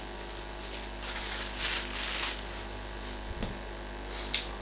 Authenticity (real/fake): real